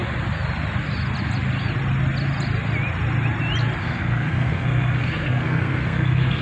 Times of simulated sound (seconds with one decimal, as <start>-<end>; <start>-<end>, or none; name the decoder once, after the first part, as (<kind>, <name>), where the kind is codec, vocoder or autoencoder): 3.8-6.4 (codec, SNAC)

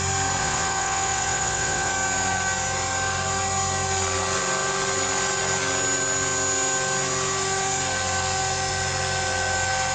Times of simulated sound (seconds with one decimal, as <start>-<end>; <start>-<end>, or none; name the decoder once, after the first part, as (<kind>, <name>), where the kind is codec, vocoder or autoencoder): 0.4-1.9 (vocoder, WaveNeXt)

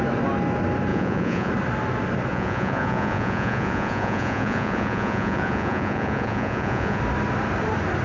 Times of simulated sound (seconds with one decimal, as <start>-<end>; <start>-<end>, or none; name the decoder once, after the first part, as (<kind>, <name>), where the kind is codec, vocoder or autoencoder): 0.9-1.5 (vocoder, Vocos); 2.3-7.0

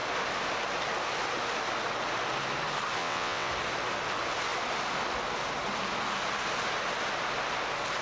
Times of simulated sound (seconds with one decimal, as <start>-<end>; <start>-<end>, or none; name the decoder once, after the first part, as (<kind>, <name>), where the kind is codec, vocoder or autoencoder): 3.0-3.5 (vocoder, WaveNeXt)

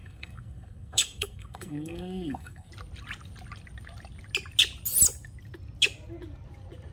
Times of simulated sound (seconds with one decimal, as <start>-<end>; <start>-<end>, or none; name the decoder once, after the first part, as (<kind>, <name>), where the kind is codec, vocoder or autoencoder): 0.0-2.7 (codec, SNAC)

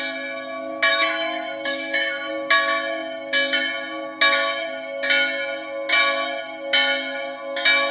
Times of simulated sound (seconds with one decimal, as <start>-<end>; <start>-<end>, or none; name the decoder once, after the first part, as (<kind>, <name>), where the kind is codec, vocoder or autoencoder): 0.9-2.3 (autoencoder, DAC-VAE)

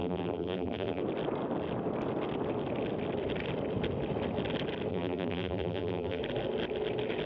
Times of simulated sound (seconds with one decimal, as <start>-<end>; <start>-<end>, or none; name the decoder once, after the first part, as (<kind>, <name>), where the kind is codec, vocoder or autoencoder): 0.0-1.0 (vocoder, BigVGAN v2); 4.9-6.2

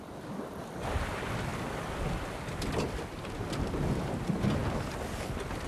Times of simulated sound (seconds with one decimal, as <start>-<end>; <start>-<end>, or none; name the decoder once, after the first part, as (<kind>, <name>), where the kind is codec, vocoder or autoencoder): none